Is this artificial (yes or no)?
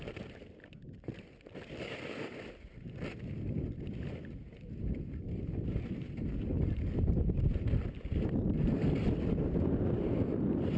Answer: no